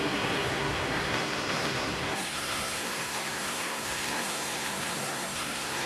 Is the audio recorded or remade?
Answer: remade